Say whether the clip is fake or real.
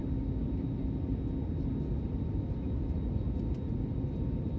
real